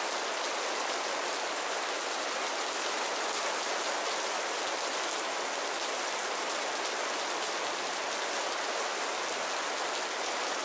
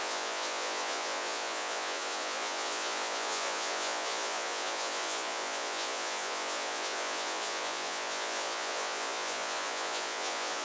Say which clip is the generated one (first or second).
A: second